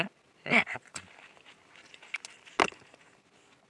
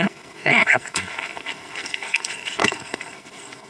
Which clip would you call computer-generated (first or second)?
second